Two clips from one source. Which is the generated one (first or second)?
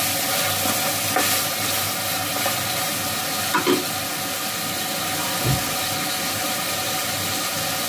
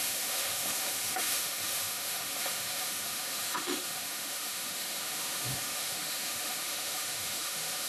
second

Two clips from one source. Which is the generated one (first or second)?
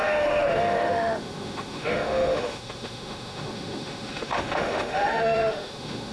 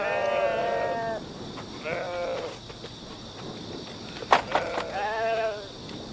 first